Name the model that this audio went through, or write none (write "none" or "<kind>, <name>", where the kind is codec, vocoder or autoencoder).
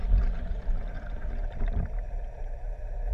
vocoder, BigVGAN v2